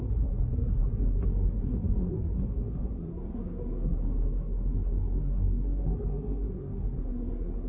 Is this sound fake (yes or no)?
yes